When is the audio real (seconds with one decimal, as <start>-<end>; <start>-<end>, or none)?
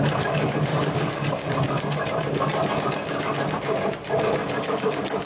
0.0-0.7; 1.5-4.4